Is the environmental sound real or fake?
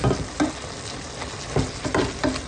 real